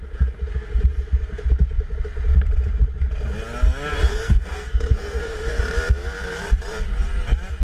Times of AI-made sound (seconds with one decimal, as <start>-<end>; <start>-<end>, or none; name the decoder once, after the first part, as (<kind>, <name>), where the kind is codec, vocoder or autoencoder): 4.1-5.6 (codec, SNAC)